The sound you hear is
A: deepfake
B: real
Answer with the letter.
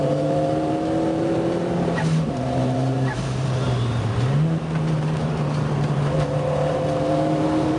A